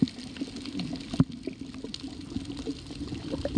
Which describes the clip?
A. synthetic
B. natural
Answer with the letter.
B